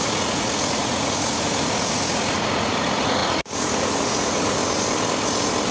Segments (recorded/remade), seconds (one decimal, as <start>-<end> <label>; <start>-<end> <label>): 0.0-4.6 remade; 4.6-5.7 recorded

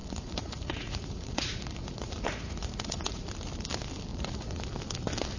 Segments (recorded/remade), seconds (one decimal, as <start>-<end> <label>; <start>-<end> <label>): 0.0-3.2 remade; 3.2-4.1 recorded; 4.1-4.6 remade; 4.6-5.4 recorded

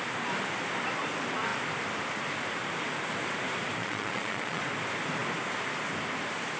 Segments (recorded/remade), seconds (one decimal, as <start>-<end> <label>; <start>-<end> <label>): 0.0-3.8 recorded; 3.8-4.6 remade; 4.6-6.6 recorded